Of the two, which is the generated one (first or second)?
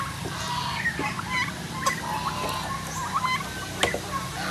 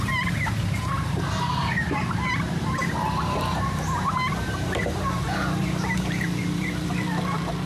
second